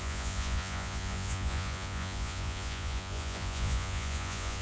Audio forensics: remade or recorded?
remade